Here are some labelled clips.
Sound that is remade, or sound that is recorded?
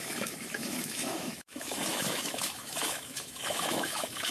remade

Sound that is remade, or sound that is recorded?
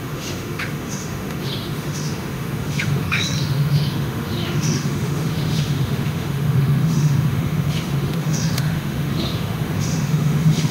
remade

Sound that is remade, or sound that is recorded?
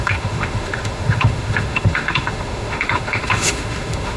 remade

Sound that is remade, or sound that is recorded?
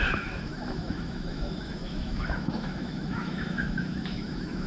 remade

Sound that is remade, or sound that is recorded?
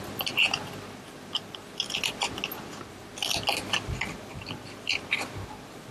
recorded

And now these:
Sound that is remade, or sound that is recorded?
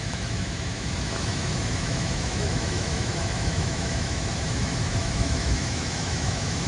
remade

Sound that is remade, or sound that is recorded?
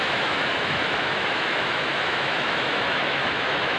remade